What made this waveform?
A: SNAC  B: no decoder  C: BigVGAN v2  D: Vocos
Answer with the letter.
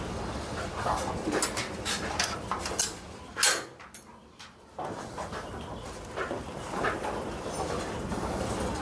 B